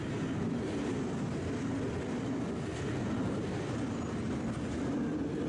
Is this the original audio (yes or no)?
yes